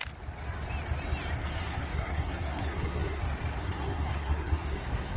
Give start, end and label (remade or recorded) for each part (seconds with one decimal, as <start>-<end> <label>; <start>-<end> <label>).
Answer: 0.0-1.4 recorded; 1.4-3.2 remade; 3.2-3.6 recorded; 3.6-5.2 remade